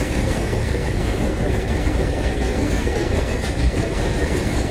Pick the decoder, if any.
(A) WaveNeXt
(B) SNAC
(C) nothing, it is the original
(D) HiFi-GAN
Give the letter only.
B